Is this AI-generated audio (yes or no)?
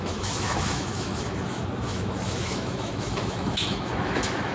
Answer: yes